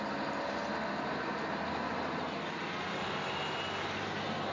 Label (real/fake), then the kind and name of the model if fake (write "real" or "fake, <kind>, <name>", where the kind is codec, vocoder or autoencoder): real